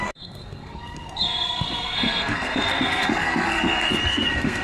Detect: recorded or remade remade